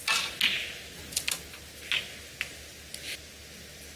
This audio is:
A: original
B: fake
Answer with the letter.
A